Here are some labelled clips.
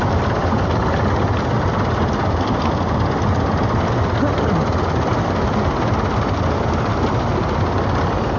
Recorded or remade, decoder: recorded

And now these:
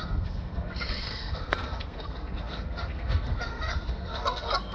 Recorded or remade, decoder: remade, codec, SNAC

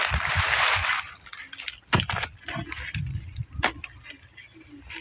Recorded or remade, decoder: recorded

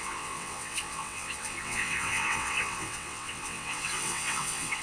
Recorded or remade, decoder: remade, vocoder, WaveNeXt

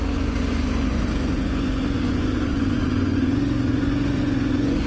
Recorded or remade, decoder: remade, vocoder, Vocos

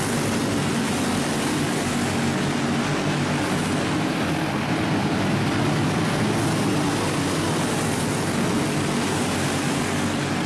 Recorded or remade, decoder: recorded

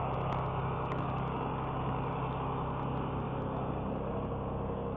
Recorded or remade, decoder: remade, codec, DAC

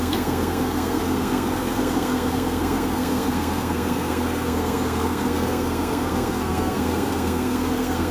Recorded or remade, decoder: remade, codec, SNAC